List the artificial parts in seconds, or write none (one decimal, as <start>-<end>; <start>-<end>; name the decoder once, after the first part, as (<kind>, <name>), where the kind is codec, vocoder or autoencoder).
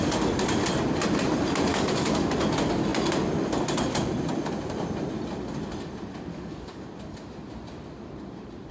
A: 1.7-2.3 (codec, DAC); 6.3-6.8